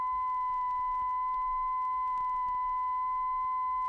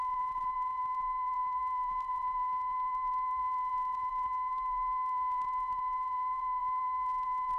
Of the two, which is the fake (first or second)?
second